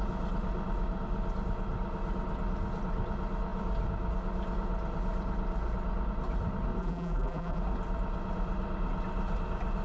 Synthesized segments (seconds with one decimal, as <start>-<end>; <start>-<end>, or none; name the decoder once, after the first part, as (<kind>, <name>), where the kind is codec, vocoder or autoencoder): 6.8-7.6 (vocoder, BigVGAN v2)